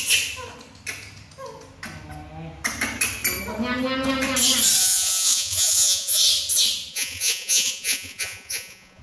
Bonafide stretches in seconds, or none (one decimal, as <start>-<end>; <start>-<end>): 0.0-4.8; 6.2-6.9